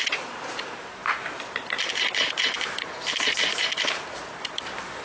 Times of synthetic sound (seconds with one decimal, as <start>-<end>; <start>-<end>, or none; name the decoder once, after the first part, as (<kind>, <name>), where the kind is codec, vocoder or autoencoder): 0.0-1.0 (vocoder, BigVGAN v2); 3.6-5.0